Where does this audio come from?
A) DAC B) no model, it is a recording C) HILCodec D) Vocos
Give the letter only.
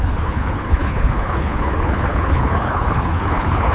C